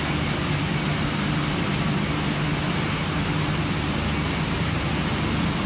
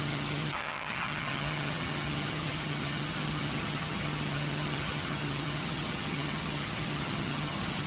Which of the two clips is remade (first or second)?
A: second